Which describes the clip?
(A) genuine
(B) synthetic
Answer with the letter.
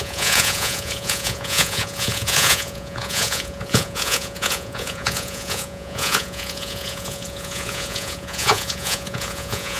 B